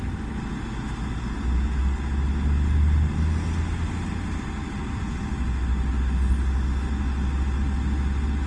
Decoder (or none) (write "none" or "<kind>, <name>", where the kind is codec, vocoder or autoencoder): none